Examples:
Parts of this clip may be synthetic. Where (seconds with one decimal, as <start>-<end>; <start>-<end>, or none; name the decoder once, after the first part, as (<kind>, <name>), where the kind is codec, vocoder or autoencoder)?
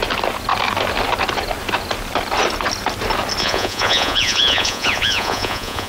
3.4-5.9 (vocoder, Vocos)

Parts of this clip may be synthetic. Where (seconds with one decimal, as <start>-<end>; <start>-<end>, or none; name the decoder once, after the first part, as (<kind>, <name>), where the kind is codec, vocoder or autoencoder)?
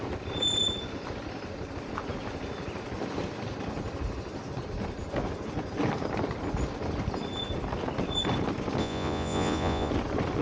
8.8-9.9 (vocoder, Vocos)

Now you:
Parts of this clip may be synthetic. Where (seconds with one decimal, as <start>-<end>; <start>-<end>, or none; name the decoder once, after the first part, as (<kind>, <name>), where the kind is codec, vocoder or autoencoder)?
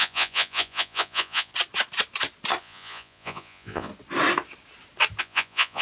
0.0-1.5 (vocoder, Vocos); 2.6-3.9; 5.2-5.8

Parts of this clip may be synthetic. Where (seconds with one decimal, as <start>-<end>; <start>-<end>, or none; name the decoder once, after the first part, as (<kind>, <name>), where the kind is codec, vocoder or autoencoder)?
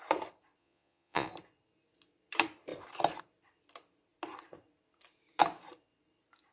0.6-1.3 (vocoder, Vocos)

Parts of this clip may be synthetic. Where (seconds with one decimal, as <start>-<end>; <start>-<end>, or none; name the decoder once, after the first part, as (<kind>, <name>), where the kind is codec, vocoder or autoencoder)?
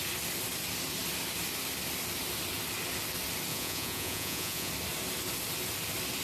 3.5-4.7 (vocoder, Vocos)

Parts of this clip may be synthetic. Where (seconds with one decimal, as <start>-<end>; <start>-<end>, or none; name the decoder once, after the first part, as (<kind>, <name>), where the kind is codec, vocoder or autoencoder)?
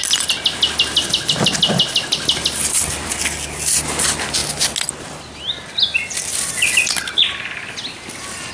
none